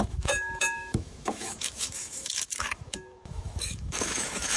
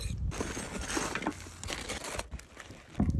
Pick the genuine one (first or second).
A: second